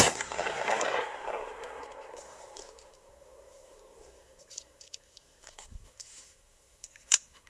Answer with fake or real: fake